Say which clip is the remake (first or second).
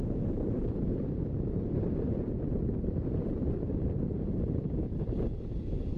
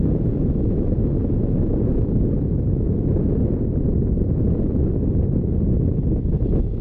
first